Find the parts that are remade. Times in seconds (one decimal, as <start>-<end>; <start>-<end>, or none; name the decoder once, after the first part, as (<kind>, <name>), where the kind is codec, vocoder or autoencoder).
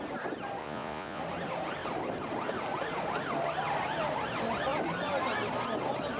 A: 0.6-1.2 (vocoder, Vocos)